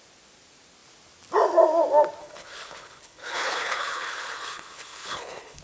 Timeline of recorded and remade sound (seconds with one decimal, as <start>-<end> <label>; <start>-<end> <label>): 0.0-2.2 recorded; 2.2-5.6 remade